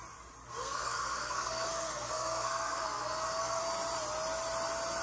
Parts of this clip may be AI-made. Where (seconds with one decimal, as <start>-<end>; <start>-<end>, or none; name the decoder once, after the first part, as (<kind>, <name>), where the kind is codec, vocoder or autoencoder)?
0.6-3.6 (codec, SNAC)